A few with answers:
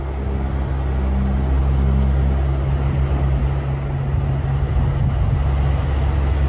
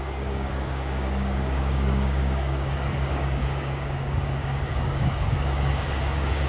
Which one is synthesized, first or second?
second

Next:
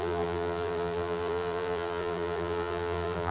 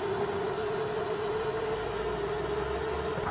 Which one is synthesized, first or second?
first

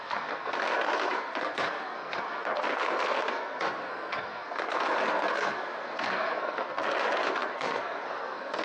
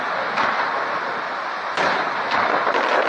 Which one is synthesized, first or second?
first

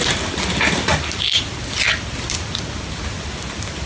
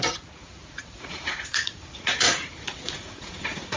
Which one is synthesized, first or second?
second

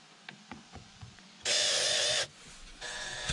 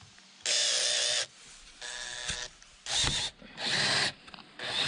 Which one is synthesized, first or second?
first